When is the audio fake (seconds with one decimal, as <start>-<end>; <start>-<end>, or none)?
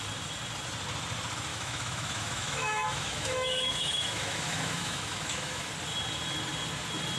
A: 1.5-5.7